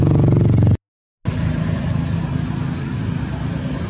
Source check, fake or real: real